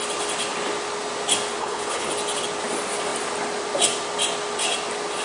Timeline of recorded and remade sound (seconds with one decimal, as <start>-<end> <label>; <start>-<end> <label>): 0.0-1.6 recorded; 1.6-2.1 remade; 2.1-5.2 recorded